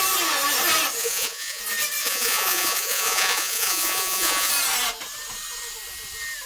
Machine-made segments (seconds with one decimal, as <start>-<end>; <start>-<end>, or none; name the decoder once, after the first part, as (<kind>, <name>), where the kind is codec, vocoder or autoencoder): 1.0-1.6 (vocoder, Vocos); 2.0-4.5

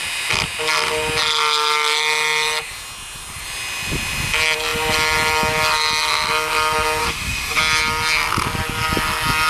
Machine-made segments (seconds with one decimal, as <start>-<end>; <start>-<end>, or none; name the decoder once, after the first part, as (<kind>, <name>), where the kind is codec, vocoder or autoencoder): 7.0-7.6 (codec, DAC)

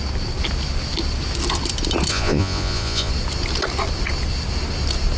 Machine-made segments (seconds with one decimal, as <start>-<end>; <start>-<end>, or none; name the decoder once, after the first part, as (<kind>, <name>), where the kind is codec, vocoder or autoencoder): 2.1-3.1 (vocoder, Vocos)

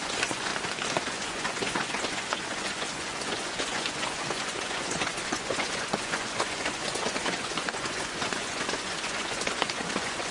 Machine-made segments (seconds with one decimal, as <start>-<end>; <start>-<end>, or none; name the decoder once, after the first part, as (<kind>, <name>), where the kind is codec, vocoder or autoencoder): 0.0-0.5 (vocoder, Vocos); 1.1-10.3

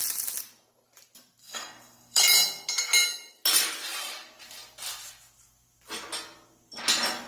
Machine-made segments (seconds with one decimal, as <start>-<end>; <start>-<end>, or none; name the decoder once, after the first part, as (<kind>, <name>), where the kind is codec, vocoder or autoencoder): 1.4-2.2 (codec, SNAC)

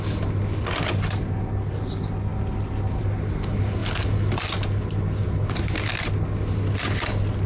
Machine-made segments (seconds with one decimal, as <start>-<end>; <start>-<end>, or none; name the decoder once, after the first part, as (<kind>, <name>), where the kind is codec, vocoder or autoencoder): none